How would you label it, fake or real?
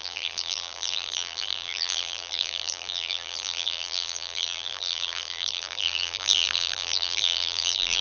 fake